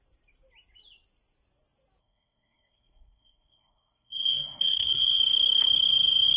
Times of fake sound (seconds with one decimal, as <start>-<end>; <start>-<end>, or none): 2.0-5.2